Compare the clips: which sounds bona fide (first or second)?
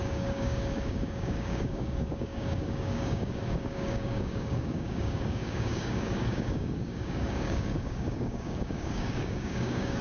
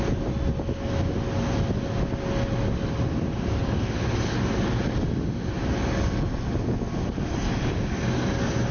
second